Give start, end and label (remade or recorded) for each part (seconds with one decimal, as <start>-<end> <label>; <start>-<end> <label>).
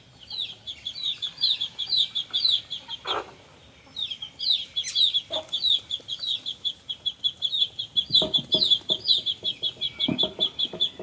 0.0-11.0 recorded